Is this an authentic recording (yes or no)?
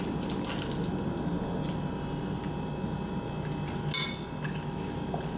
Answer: yes